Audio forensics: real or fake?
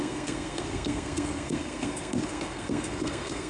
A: fake